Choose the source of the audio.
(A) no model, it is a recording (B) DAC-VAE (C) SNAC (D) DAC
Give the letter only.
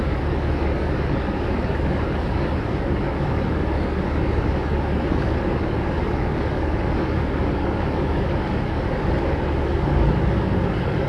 D